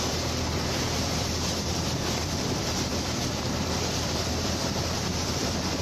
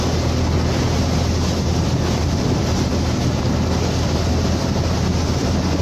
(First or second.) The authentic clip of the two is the second